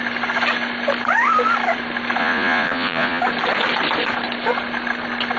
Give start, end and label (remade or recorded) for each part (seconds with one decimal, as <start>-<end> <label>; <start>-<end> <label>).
0.0-2.2 recorded; 2.2-3.2 remade; 3.2-5.4 recorded